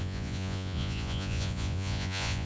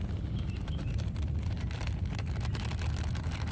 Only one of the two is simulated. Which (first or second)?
first